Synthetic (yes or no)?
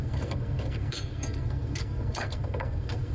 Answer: yes